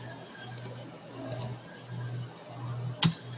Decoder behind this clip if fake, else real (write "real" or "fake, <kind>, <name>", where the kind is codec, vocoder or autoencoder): real